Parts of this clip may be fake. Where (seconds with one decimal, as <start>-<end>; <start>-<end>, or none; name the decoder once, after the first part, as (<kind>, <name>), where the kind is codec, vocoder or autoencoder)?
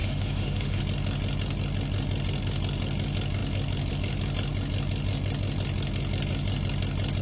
0.0-0.8 (autoencoder, DAC-VAE)